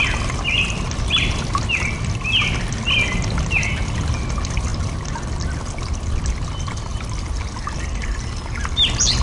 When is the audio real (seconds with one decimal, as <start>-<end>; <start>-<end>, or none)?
0.0-9.2